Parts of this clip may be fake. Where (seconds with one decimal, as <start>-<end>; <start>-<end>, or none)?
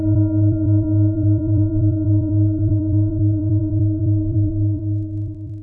0.0-5.6